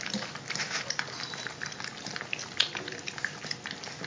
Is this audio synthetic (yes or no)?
no